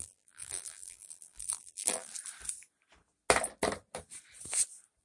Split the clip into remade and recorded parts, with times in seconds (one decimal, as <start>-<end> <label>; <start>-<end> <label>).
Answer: 0.0-2.1 remade; 2.1-5.0 recorded